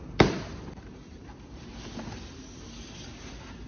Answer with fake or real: real